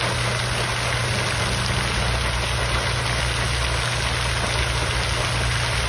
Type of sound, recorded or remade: recorded